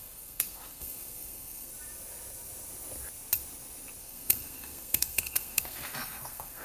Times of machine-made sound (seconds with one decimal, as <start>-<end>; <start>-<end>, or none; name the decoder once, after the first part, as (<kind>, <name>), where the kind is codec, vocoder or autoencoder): 0.0-1.7 (codec, SNAC); 4.0-6.6